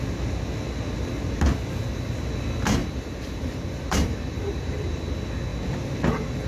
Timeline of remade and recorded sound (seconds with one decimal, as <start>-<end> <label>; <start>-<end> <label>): 0.0-2.8 recorded; 2.8-5.0 remade; 5.0-6.5 recorded